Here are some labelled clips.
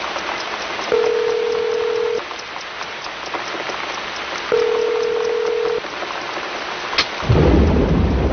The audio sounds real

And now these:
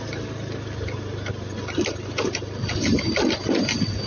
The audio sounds real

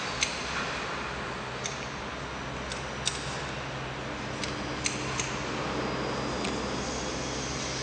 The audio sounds real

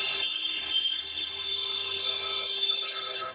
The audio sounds fake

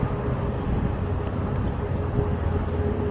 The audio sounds real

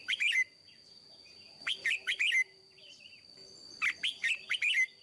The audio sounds fake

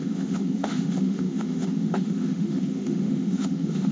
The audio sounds fake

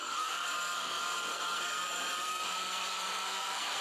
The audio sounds fake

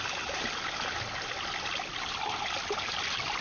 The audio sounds real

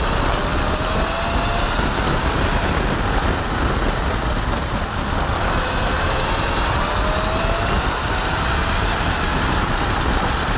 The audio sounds real